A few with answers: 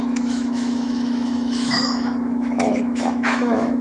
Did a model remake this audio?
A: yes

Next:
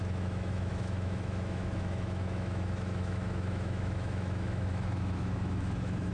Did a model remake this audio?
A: yes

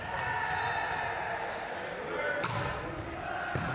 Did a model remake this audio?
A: no